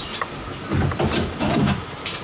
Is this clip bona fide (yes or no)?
yes